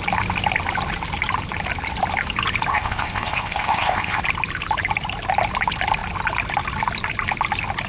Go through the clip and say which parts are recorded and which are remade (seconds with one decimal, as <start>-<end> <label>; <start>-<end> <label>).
0.0-2.7 recorded; 2.7-4.2 remade; 4.2-7.9 recorded